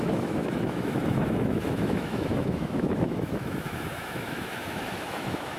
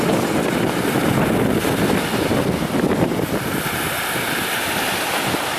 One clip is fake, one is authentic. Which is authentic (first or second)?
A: second